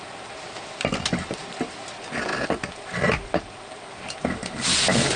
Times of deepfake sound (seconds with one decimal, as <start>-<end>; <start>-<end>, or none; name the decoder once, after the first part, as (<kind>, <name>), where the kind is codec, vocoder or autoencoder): none